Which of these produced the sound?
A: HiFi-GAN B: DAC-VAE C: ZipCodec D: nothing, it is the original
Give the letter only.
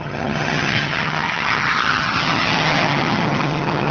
A